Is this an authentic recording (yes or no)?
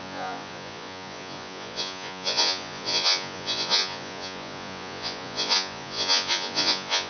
no